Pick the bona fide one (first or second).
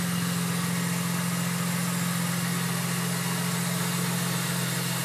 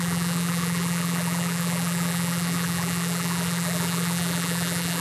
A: first